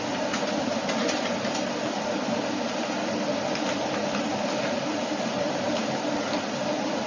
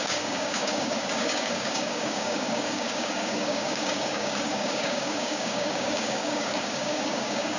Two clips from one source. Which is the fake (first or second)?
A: second